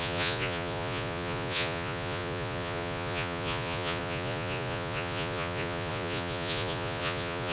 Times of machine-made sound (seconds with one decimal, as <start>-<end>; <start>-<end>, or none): 0.0-7.5